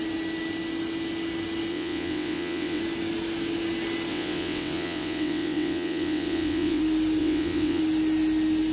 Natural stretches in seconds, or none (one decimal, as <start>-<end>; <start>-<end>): 0.0-1.7; 2.8-4.1; 6.8-7.2; 7.8-8.7